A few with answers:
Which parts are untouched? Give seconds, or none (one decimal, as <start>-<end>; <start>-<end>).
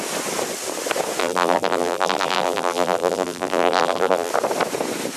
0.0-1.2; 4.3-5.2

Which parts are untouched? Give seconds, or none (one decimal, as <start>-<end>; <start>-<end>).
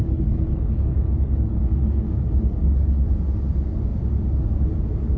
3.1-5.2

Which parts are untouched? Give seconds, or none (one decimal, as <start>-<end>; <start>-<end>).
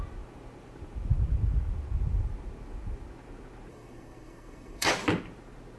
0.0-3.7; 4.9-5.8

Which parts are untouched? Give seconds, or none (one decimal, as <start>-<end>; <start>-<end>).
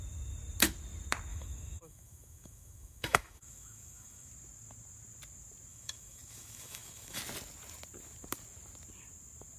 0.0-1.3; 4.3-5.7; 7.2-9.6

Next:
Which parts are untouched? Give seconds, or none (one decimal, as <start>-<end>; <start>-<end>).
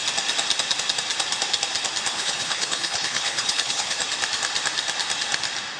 0.0-2.1; 4.0-5.8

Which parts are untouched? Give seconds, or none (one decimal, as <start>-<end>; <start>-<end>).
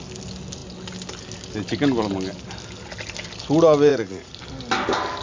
0.0-3.9; 4.4-5.2